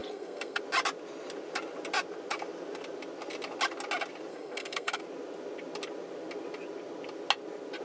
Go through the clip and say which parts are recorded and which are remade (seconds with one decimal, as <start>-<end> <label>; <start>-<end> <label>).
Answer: 0.0-0.6 remade; 0.6-4.3 recorded; 4.3-5.0 remade; 5.0-7.8 recorded